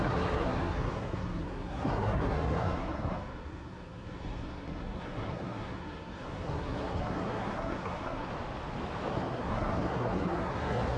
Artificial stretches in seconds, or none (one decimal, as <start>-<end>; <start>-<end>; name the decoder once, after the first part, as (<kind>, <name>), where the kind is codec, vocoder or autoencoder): 0.0-8.3 (codec, SNAC); 9.1-11.0